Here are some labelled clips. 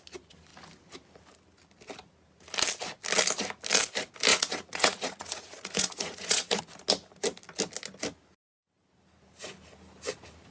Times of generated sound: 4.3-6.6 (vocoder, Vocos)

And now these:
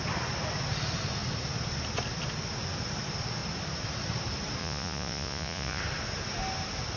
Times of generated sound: 4.6-5.8 (vocoder, Vocos)

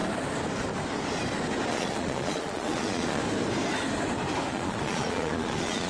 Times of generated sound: 1.7-3.2 (vocoder, Vocos); 4.5-5.9

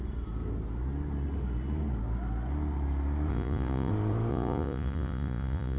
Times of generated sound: 3.3-3.9 (vocoder, Vocos); 4.3-5.8

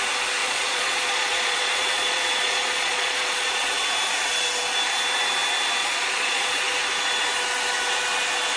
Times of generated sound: 0.4-3.7 (vocoder, Vocos); 5.8-6.7

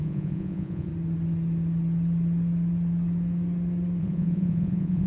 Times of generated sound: 0.0-0.9 (vocoder, Vocos); 4.0-5.1

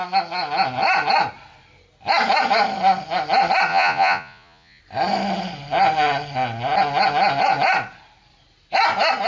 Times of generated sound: 3.7-4.8 (vocoder, Vocos)

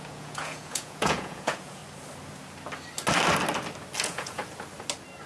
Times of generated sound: 0.0-1.8 (vocoder, Vocos); 4.0-4.4